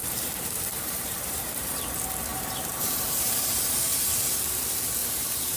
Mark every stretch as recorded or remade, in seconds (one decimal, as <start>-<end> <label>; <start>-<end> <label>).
0.0-1.8 remade; 1.8-2.3 recorded; 2.3-3.4 remade; 3.4-5.0 recorded; 5.0-5.6 remade

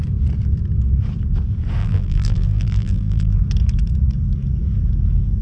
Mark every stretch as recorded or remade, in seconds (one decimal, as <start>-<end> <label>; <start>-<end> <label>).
0.0-1.8 recorded; 1.8-3.4 remade; 3.4-5.4 recorded

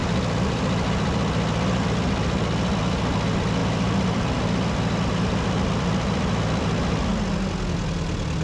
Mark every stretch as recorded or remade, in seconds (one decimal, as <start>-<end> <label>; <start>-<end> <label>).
0.0-2.8 remade; 2.8-3.6 recorded; 3.6-7.1 remade; 7.1-8.4 recorded